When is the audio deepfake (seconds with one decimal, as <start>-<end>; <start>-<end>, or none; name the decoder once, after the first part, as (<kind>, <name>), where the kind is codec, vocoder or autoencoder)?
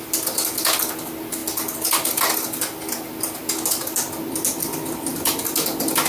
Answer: none